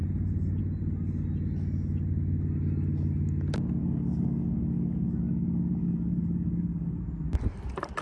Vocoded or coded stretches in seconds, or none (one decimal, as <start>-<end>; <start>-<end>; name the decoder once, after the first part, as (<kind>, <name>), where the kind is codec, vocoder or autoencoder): 3.8-7.0 (codec, DAC)

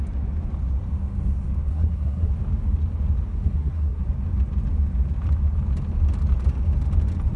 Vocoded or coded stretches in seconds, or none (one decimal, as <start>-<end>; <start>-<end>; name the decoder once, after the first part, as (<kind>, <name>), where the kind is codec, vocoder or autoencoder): 1.7-2.3 (codec, SNAC); 3.3-4.0

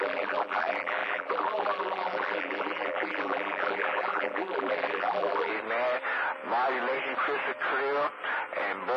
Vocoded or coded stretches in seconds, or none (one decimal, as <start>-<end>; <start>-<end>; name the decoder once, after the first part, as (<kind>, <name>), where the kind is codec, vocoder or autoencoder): 0.0-5.5 (vocoder, BigVGAN v2)

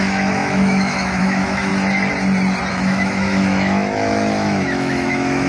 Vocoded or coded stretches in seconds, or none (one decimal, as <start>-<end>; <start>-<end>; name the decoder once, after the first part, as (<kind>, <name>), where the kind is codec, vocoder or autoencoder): 0.0-1.7 (autoencoder, DAC-VAE); 2.7-5.5

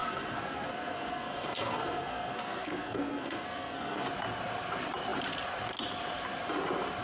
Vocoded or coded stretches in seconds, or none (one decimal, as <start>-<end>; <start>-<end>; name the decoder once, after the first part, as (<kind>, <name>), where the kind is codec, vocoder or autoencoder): 0.0-4.1 (codec, SNAC)